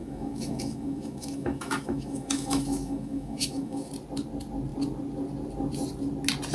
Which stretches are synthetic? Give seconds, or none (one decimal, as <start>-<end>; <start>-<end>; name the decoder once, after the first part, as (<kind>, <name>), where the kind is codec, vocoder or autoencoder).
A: 0.0-3.9 (autoencoder, DAC-VAE)